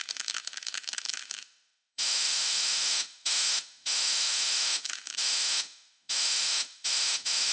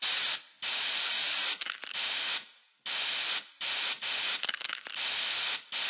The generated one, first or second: first